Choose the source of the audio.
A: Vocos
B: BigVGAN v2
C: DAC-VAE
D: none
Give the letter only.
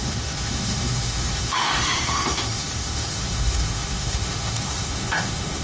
C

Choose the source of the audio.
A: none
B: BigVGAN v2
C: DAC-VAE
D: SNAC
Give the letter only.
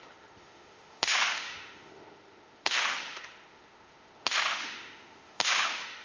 C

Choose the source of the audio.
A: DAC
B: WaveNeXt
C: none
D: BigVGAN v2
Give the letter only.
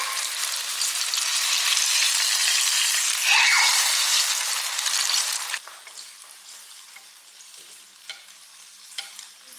D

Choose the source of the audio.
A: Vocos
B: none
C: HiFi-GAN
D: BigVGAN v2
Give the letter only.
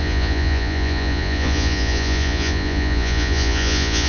A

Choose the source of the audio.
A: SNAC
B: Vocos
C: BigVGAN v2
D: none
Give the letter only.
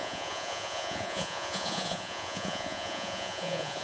B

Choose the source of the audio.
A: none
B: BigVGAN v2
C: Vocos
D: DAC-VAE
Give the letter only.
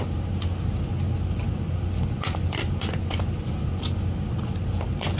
A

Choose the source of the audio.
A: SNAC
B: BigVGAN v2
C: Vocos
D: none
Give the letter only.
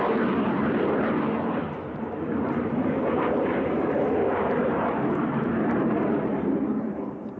B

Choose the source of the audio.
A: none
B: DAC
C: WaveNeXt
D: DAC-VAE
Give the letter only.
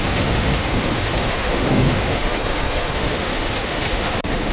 D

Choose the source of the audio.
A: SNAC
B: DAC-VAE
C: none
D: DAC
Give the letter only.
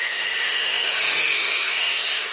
B